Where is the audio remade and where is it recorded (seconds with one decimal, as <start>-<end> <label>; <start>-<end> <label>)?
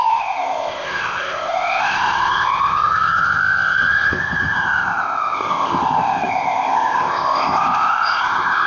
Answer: 0.0-8.7 remade